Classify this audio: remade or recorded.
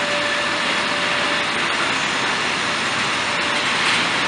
recorded